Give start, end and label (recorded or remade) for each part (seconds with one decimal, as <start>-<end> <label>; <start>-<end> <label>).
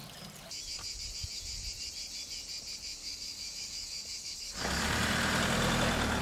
0.0-3.0 recorded; 3.0-4.6 remade; 4.6-6.2 recorded